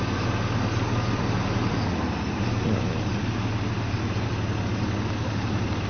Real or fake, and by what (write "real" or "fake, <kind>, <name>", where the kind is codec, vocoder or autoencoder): real